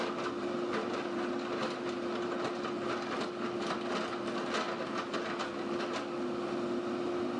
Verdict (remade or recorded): recorded